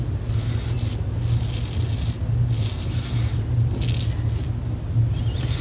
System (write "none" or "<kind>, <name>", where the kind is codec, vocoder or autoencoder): none